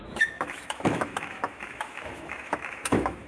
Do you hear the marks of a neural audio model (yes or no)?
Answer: yes